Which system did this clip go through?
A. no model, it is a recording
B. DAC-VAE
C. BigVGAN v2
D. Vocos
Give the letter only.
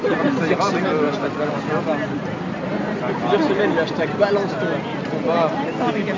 A